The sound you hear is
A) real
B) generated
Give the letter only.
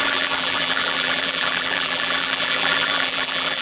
B